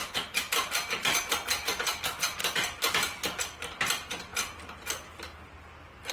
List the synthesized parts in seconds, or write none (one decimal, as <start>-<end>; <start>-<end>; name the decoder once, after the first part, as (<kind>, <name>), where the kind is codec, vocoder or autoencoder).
1.2-4.3 (vocoder, BigVGAN v2)